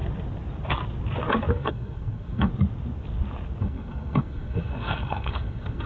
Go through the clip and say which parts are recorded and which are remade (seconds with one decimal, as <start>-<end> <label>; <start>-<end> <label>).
0.0-1.5 recorded; 1.5-2.5 remade; 2.5-3.6 recorded; 3.6-5.9 remade